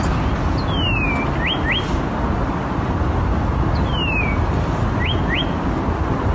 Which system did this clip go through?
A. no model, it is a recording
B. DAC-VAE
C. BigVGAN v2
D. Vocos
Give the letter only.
A